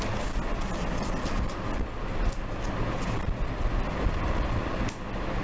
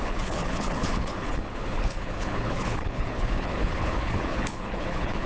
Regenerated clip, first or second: second